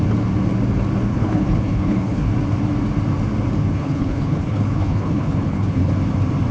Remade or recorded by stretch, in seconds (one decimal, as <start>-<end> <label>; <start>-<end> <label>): 0.0-1.1 recorded; 1.1-2.3 remade; 2.3-3.6 recorded; 3.6-5.9 remade; 5.9-6.5 recorded